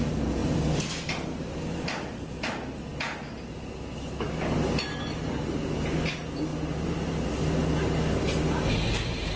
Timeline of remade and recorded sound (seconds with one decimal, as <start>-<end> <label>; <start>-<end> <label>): 0.0-2.9 remade; 2.9-5.9 recorded; 5.9-6.5 remade; 6.5-8.9 recorded; 8.9-9.4 remade

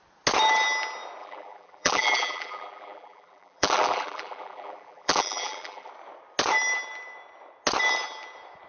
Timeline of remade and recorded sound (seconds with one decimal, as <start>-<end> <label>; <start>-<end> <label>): 0.0-1.2 recorded; 1.2-5.9 remade; 5.9-8.7 recorded

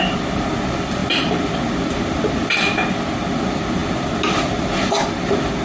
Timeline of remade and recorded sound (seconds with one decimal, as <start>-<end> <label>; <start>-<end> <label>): 0.0-5.6 recorded

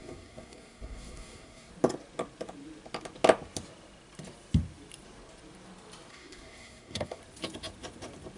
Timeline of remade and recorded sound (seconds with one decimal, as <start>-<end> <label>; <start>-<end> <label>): 0.0-1.7 remade; 1.7-6.1 recorded; 6.1-7.2 remade; 7.2-8.4 recorded